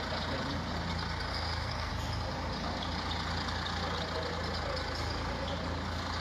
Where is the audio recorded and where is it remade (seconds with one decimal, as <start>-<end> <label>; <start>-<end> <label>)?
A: 0.0-1.3 recorded; 1.3-1.9 remade; 1.9-6.2 recorded